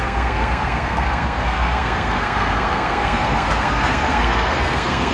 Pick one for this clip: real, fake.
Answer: fake